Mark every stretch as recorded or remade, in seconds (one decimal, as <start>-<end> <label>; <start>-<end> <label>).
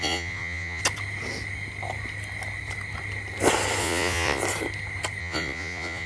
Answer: 0.0-0.8 remade; 0.8-3.8 recorded; 3.8-4.4 remade; 4.4-5.2 recorded; 5.2-6.1 remade